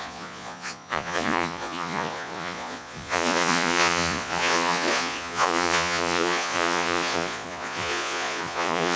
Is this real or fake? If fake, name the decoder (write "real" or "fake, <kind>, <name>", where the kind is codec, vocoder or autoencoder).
fake, vocoder, Vocos